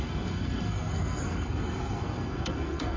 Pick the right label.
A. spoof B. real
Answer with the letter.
A